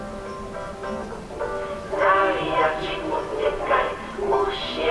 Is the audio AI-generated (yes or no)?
no